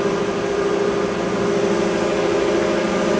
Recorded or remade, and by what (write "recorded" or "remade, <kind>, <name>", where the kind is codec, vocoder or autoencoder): recorded